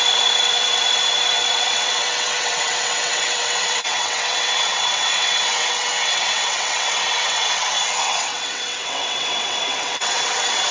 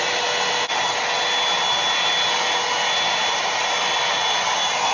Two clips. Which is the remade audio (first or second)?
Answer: first